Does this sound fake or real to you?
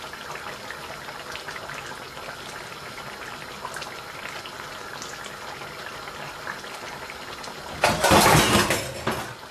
real